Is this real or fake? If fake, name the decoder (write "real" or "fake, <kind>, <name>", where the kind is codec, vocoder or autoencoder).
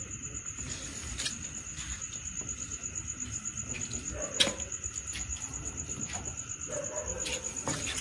real